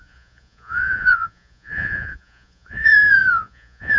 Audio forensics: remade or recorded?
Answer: remade